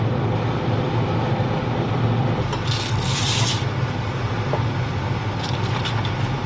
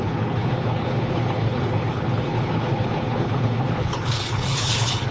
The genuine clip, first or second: first